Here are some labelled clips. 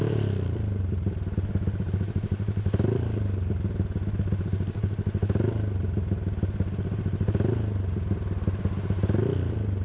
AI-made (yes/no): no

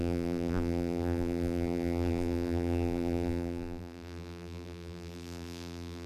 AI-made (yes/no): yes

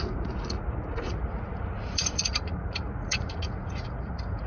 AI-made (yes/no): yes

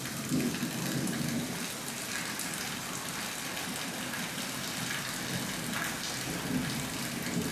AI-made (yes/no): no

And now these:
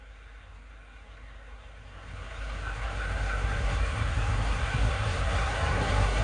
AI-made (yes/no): yes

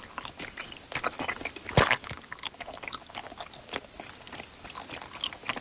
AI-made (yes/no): no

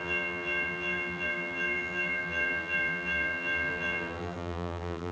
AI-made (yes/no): yes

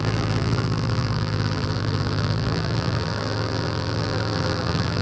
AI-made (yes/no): yes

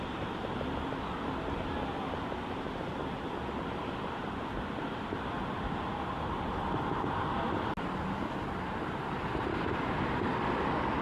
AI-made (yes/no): no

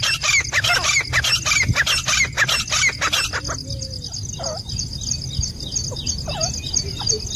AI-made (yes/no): no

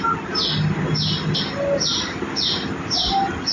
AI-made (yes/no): no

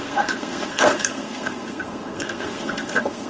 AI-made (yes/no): yes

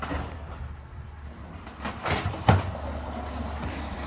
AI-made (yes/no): no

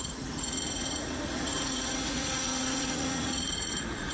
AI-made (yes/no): yes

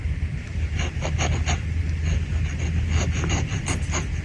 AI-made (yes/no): no